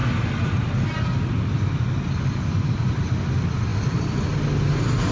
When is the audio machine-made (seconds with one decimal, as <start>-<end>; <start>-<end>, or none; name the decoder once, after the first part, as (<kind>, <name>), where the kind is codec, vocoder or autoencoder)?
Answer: none